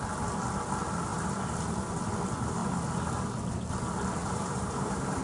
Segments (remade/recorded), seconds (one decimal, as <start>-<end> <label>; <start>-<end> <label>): 0.0-1.1 recorded; 1.1-1.6 remade; 1.6-4.2 recorded; 4.2-5.2 remade